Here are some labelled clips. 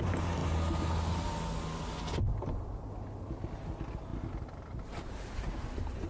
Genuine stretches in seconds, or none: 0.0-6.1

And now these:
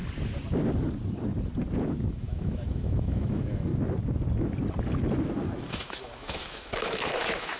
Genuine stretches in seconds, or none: 0.0-2.1; 3.7-5.7

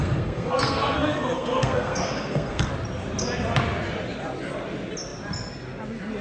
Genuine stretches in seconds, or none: 2.7-6.2